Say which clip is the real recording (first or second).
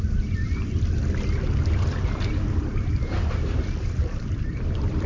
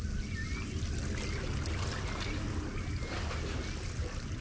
second